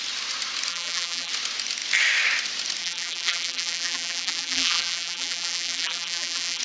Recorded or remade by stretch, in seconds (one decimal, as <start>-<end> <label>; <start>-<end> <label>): 0.0-0.7 recorded; 0.7-1.3 remade; 1.3-2.8 recorded; 2.8-6.6 remade